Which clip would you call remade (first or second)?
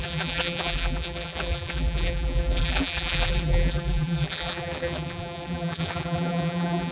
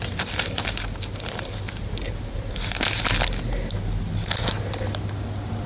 first